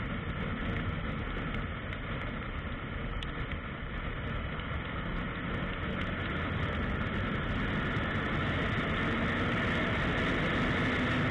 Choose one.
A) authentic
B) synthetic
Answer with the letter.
A